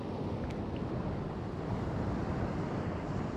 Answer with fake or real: real